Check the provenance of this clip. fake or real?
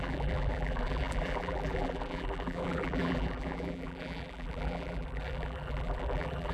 fake